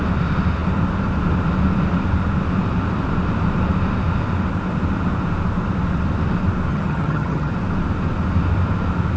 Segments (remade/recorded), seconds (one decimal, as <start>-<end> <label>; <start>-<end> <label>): 0.0-6.7 recorded; 6.7-7.5 remade; 7.5-9.2 recorded